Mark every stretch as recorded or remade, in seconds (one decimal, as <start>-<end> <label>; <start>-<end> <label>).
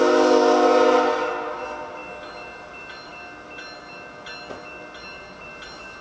0.0-6.0 recorded